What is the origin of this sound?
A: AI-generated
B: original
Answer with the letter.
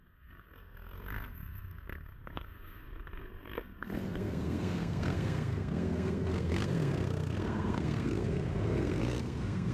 A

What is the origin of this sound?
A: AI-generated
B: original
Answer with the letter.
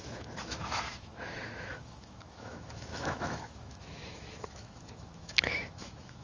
A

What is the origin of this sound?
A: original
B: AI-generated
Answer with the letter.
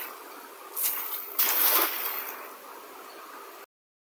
A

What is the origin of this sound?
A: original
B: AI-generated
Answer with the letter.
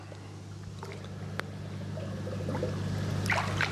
A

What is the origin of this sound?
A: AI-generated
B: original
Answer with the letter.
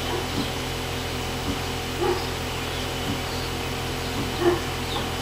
B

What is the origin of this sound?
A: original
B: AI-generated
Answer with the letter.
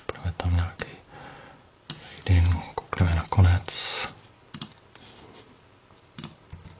A